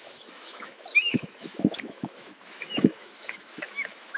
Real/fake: fake